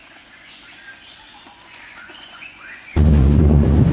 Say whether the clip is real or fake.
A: fake